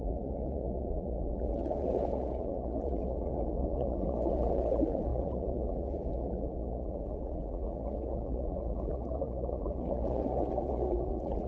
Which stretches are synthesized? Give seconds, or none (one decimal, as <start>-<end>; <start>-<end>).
0.0-11.5